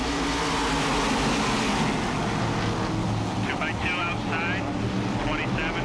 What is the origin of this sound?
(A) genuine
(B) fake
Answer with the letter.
A